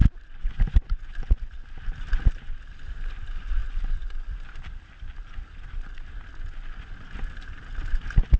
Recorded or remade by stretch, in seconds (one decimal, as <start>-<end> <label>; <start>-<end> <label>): 0.0-8.4 recorded